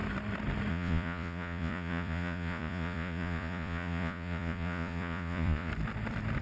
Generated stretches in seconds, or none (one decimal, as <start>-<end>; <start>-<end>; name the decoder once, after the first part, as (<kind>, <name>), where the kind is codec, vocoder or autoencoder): 0.7-5.7 (vocoder, Vocos)